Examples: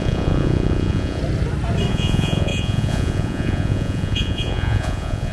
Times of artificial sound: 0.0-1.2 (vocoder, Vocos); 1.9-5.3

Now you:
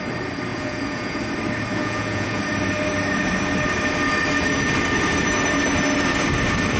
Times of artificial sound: 0.5-1.2 (vocoder, Vocos); 1.7-2.4

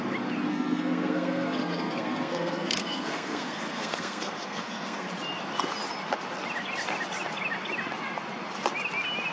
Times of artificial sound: 0.5-5.1 (codec, SNAC)

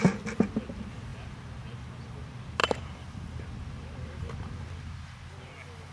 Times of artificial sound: 2.6-3.4 (vocoder, BigVGAN v2)